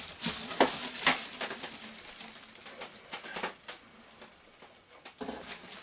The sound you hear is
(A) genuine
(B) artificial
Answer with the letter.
A